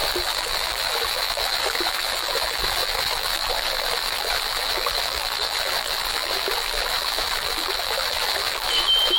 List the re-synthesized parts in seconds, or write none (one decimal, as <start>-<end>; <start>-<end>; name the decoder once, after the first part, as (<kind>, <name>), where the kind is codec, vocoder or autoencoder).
0.0-9.2 (vocoder, BigVGAN v2)